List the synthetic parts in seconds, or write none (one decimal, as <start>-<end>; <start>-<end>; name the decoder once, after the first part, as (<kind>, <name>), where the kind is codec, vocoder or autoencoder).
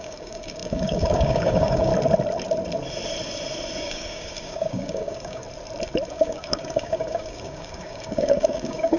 0.0-1.9 (codec, DAC); 3.8-5.4; 6.1-9.0